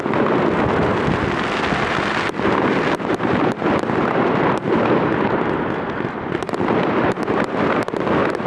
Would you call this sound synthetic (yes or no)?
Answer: no